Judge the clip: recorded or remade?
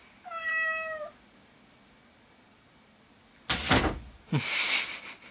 recorded